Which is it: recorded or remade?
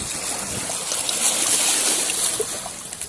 recorded